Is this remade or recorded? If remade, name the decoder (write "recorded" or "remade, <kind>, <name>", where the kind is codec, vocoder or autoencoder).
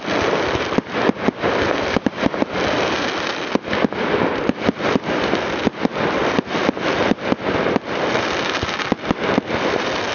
recorded